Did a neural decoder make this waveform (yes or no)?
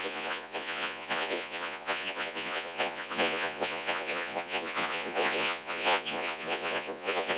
yes